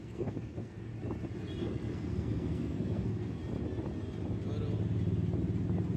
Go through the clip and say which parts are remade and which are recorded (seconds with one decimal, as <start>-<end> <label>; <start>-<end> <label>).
0.0-0.9 remade; 0.9-1.6 recorded; 1.6-3.4 remade; 3.4-6.0 recorded